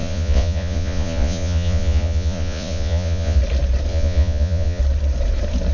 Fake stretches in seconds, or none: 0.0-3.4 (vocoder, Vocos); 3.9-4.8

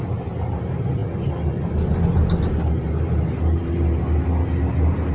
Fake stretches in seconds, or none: none

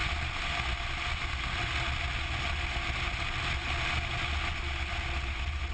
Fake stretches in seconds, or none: none